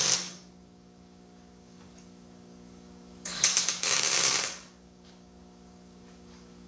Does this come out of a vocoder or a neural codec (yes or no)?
yes